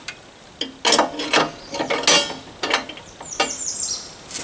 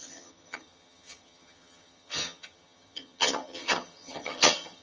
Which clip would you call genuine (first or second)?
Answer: first